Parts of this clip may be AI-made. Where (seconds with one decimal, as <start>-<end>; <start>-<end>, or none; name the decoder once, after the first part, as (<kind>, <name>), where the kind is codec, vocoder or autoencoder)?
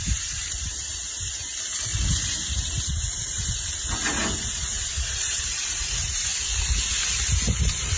0.0-6.3 (vocoder, BigVGAN v2); 6.9-8.0